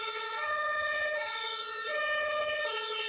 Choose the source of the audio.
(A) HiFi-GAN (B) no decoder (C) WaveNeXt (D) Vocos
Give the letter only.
A